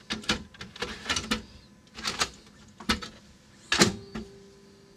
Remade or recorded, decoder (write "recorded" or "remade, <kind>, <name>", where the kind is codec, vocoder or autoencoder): recorded